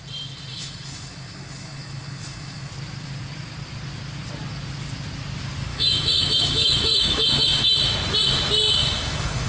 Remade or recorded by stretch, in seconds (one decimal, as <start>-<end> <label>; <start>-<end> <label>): 0.0-0.5 recorded; 0.5-2.7 remade; 2.7-5.7 recorded; 5.7-7.7 remade; 7.7-8.8 recorded; 8.8-9.5 remade